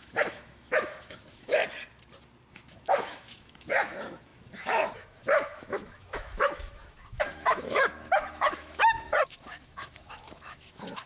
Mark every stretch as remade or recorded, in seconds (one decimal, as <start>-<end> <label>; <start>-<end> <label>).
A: 0.0-1.6 remade; 1.6-2.5 recorded; 2.5-11.1 remade